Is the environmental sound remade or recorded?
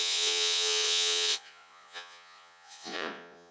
remade